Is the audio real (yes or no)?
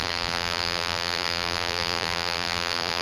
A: no